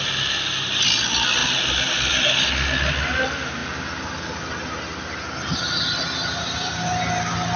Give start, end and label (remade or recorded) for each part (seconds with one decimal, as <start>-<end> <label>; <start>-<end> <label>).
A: 0.0-7.6 recorded